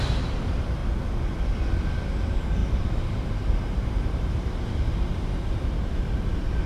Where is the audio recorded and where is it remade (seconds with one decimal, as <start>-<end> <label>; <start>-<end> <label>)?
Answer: 0.0-0.8 remade; 0.8-2.2 recorded; 2.2-6.7 remade